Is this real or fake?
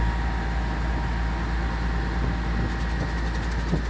real